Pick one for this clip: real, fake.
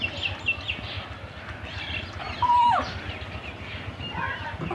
real